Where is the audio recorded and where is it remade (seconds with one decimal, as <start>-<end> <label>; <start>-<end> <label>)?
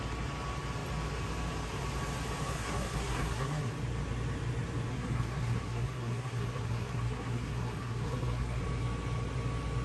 0.0-2.4 recorded; 2.4-3.7 remade; 3.7-4.9 recorded; 4.9-8.6 remade; 8.6-9.8 recorded